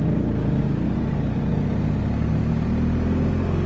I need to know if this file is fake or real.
real